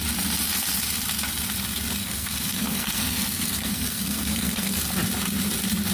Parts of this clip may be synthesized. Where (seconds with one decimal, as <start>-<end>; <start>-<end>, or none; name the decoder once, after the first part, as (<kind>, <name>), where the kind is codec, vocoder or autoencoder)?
2.0-4.8 (codec, SNAC)